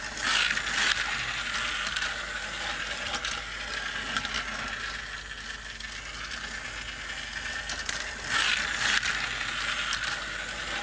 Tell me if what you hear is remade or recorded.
recorded